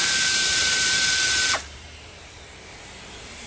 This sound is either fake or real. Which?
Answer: fake